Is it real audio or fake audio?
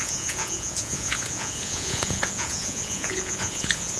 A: fake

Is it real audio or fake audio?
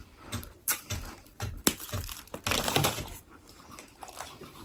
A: fake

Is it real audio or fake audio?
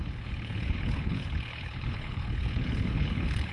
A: fake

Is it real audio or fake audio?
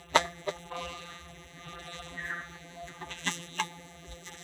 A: fake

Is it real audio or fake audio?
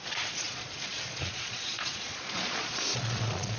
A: fake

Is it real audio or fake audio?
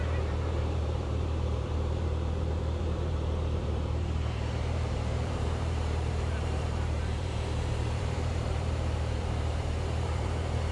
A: fake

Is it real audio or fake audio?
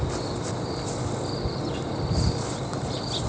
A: fake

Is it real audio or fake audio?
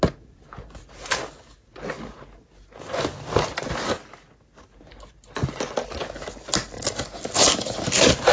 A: real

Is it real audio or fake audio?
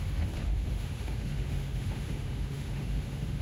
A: fake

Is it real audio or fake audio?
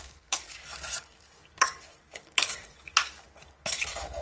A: fake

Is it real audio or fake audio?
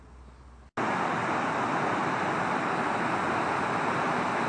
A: real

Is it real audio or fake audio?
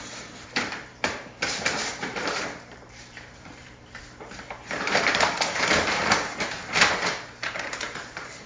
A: fake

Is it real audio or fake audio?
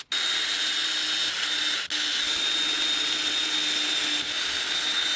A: real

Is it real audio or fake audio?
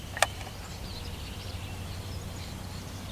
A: real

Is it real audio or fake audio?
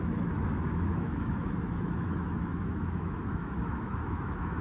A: fake